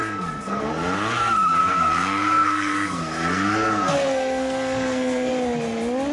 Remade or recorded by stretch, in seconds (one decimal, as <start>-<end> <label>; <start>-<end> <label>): 0.0-0.7 remade; 0.7-1.6 recorded; 1.6-5.3 remade; 5.3-6.1 recorded